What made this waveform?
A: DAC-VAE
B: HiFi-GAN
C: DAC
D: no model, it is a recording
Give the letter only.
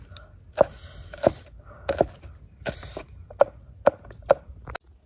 D